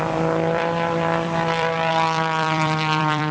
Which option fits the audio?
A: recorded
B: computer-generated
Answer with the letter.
B